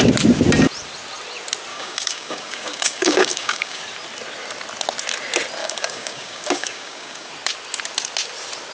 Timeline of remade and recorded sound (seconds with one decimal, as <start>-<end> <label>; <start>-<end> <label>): 0.0-1.7 recorded; 1.7-3.8 remade; 3.8-5.6 recorded; 5.6-7.3 remade; 7.3-8.7 recorded